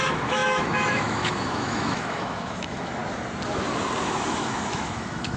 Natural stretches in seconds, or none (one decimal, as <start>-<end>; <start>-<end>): 3.0-4.0